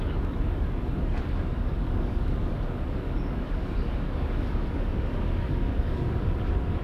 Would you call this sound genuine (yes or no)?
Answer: no